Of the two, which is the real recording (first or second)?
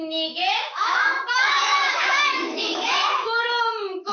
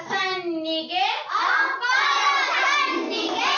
second